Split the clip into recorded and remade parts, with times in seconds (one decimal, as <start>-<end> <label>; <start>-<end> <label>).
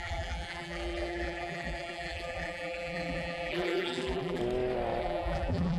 0.0-4.4 remade; 4.4-5.0 recorded; 5.0-5.8 remade